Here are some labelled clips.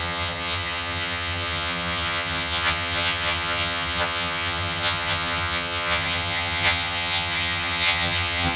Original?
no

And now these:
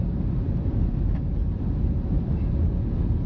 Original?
yes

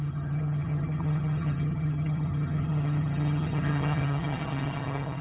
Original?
no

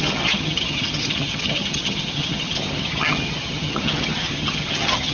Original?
no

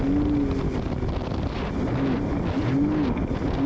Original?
yes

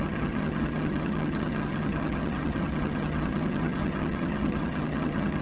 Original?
no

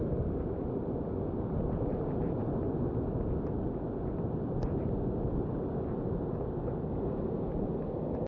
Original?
yes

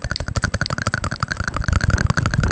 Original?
yes